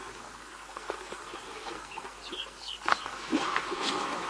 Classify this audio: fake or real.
fake